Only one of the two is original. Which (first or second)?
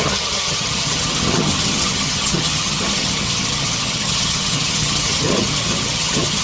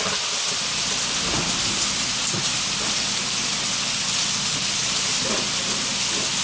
second